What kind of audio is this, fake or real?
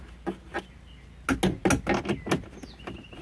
real